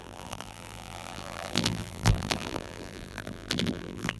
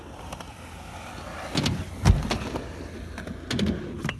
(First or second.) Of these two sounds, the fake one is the first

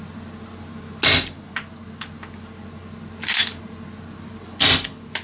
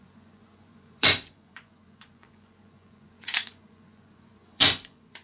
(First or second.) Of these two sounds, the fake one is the second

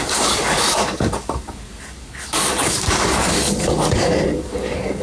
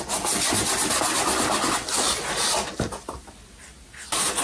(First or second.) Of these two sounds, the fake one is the first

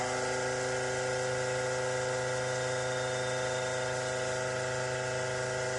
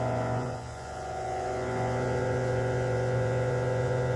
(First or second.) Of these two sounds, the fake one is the second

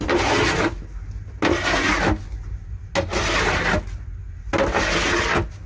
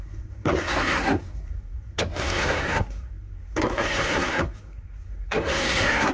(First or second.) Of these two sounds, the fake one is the second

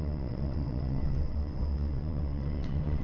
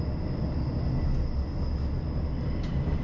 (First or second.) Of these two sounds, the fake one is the first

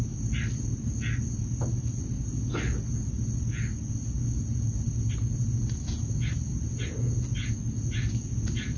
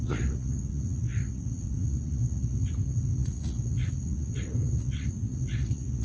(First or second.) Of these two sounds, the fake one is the second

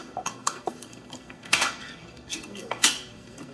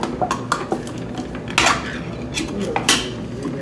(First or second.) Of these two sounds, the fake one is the first